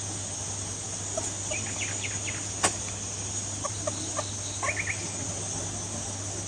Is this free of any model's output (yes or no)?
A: yes